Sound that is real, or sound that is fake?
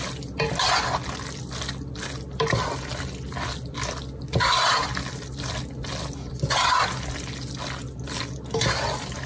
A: real